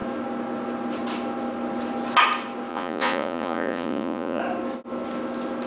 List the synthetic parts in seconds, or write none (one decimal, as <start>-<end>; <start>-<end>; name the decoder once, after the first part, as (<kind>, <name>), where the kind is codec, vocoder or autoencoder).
2.7-4.4 (vocoder, Vocos)